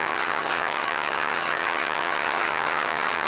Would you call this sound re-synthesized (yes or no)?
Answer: yes